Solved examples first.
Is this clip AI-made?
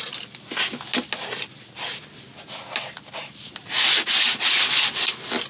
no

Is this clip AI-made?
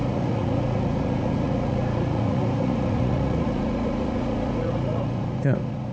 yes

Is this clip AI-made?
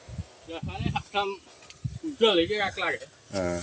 no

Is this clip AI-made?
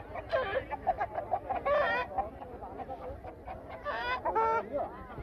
no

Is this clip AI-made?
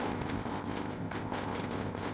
yes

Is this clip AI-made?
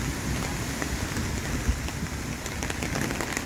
no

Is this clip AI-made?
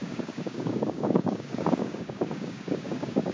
yes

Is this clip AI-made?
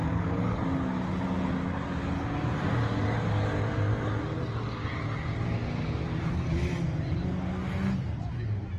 no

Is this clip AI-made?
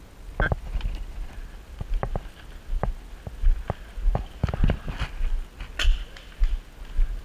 no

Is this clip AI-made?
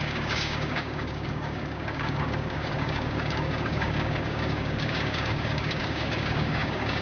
yes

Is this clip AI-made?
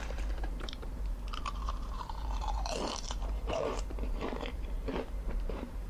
yes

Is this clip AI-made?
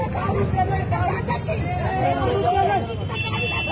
no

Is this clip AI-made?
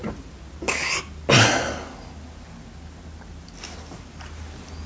no